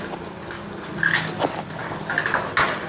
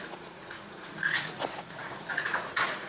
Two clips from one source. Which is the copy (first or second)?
second